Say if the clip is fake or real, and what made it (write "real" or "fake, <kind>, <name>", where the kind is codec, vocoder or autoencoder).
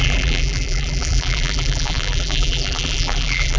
fake, vocoder, BigVGAN v2